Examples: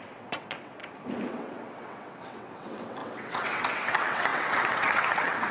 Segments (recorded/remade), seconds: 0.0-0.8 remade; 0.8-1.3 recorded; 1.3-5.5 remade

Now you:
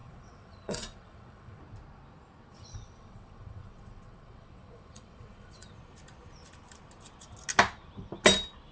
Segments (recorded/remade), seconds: 0.0-1.6 remade; 1.6-2.5 recorded; 2.5-5.7 remade; 5.7-8.7 recorded

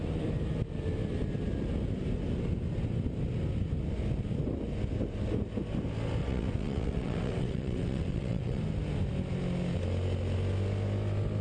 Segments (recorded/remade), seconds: 0.0-6.2 recorded; 6.2-8.6 remade; 8.6-11.4 recorded